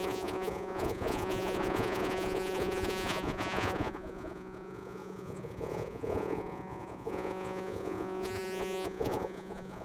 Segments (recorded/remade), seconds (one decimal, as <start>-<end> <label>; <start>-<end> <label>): 0.0-9.8 remade